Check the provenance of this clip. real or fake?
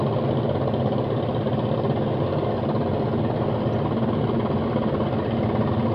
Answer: real